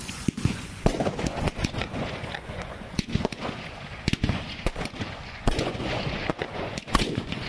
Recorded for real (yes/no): no